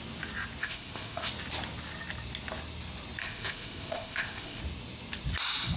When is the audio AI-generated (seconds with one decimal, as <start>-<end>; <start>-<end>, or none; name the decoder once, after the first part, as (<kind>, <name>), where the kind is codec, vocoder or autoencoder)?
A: 0.6-1.3 (codec, ZipCodec); 3.2-4.6